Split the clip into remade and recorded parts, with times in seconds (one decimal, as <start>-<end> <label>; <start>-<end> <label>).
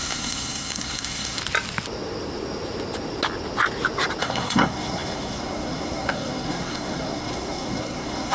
0.0-1.4 remade; 1.4-4.2 recorded; 4.2-8.3 remade